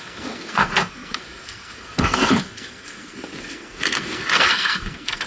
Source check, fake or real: fake